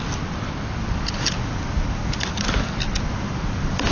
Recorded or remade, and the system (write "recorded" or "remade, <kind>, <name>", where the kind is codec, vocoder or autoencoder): recorded